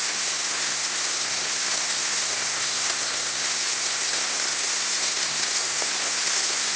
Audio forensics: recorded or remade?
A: remade